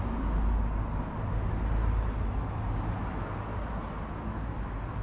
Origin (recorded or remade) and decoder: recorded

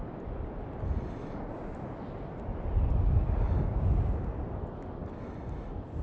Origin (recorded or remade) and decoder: recorded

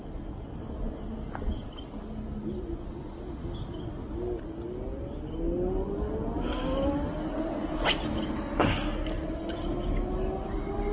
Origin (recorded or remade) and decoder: recorded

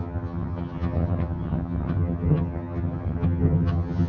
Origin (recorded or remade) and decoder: remade, vocoder, HiFi-GAN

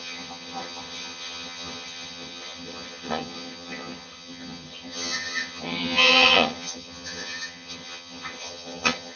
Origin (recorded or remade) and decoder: remade, vocoder, HiFi-GAN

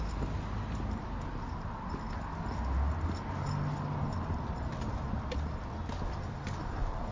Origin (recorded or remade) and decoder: recorded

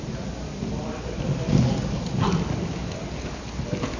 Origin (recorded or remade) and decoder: recorded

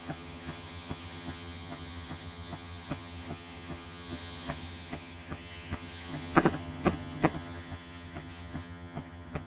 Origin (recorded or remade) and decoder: remade, vocoder, HiFi-GAN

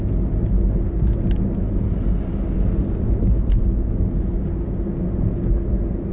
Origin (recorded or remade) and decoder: recorded